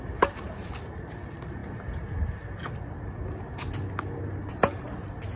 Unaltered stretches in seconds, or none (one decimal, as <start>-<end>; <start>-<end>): 0.0-5.4